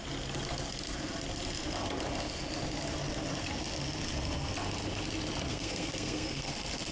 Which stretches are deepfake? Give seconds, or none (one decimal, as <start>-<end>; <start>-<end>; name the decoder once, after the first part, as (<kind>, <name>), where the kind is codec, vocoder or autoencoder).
5.5-6.5 (codec, SNAC)